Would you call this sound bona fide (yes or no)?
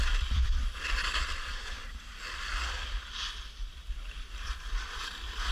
yes